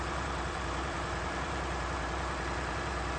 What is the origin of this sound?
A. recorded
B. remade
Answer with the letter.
B